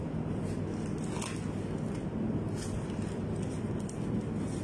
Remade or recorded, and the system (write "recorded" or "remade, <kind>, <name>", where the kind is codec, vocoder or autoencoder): recorded